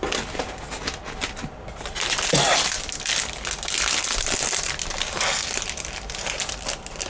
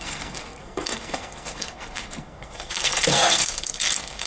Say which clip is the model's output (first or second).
second